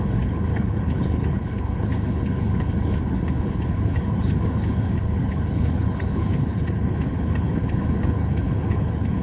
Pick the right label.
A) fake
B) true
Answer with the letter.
A